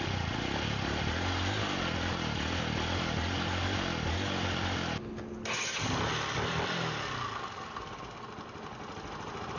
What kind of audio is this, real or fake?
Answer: real